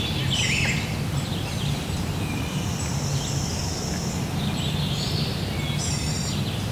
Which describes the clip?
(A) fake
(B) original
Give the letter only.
B